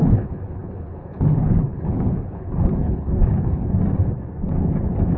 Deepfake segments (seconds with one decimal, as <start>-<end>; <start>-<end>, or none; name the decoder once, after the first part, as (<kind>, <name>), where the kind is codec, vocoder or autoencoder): 0.0-3.6 (codec, HILCodec)